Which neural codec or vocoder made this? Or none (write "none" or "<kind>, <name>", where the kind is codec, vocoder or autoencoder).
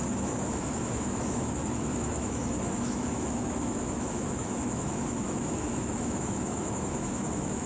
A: autoencoder, DAC-VAE